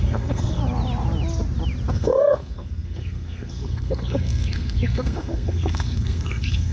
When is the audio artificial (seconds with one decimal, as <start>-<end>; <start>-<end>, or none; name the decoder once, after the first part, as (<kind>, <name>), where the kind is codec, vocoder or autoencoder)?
0.0-0.6 (codec, SNAC); 1.9-6.7